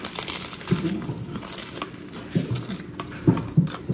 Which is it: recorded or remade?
recorded